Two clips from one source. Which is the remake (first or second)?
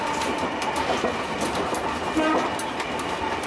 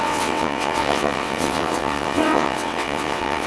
second